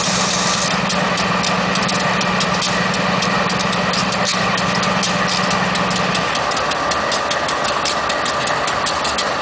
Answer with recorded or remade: recorded